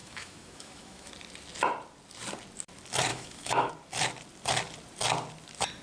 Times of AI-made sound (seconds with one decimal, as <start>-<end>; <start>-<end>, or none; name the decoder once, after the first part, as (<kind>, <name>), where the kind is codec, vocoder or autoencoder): 0.0-1.1 (autoencoder, DAC-VAE); 3.1-3.7